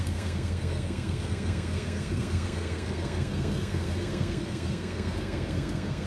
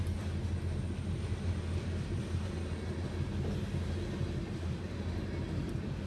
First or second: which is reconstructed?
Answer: first